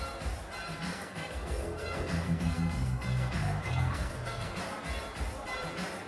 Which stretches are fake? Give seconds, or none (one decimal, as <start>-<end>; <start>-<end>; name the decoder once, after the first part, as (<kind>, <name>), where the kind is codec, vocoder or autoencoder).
0.9-4.6 (codec, SNAC)